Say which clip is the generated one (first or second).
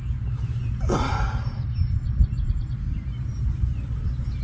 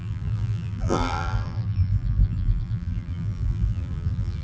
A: second